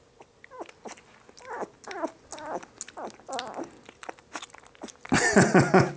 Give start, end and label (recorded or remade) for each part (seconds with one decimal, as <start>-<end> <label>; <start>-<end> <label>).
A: 0.0-6.0 recorded